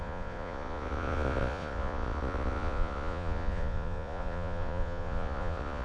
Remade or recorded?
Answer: remade